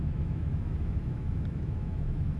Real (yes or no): no